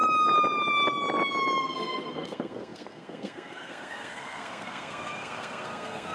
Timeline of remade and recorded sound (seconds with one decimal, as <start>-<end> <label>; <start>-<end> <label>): 0.0-1.6 recorded; 1.6-6.1 remade